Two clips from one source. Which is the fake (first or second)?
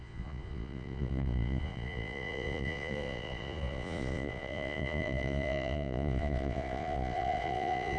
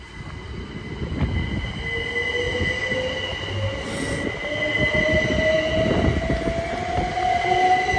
first